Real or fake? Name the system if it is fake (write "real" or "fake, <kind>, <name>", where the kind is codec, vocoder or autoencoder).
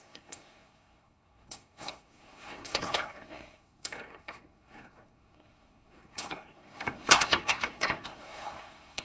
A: fake, codec, SNAC